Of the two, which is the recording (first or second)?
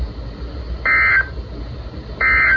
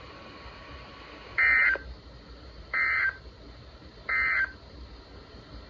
first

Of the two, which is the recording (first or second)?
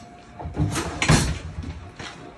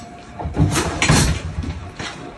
first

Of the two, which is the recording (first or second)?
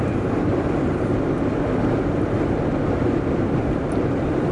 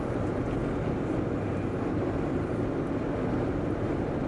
second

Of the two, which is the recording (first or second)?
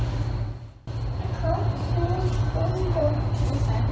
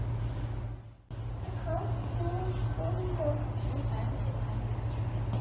second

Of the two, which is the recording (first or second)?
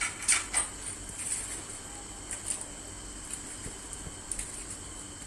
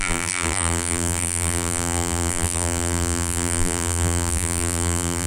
first